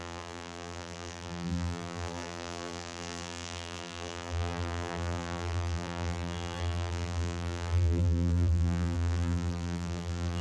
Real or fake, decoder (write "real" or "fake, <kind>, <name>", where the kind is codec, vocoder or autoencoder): fake, vocoder, BigVGAN v2